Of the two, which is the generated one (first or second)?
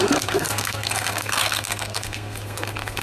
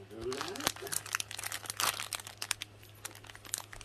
first